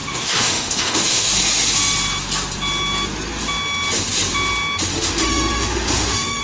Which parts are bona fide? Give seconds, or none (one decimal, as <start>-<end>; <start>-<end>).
1.3-4.9